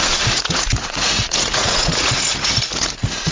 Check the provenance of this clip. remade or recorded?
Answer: remade